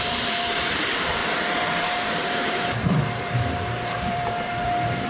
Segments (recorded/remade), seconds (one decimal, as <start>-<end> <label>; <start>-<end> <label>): 0.0-5.1 remade